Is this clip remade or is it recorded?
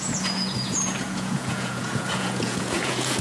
remade